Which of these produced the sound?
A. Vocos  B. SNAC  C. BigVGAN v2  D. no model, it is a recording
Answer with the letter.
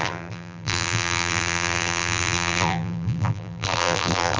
C